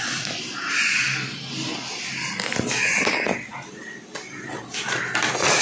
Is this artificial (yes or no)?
no